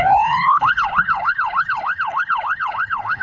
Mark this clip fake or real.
fake